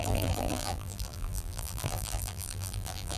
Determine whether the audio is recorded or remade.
remade